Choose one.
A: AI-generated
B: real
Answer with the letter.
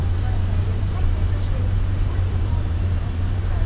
A